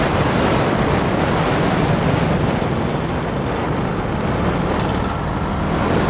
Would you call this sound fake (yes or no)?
no